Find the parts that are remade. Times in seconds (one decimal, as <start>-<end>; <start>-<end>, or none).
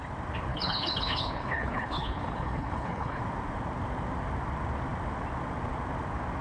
0.5-3.2